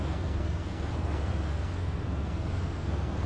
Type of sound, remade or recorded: remade